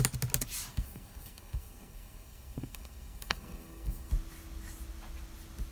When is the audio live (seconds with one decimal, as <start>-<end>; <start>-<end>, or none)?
0.0-0.7; 4.1-5.7